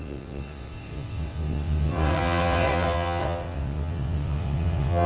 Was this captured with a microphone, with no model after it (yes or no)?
no